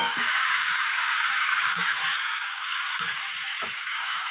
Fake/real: fake